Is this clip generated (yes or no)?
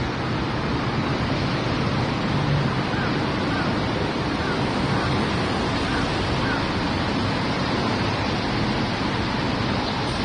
no